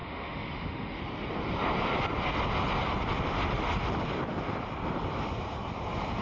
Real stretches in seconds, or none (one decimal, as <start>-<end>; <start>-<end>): 1.0-6.2